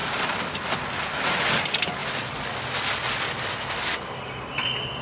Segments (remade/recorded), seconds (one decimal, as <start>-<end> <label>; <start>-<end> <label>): 0.0-5.0 recorded